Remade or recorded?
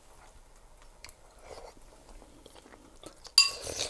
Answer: recorded